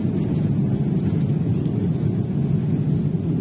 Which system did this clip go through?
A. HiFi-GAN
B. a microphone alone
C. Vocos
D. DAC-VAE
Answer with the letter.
B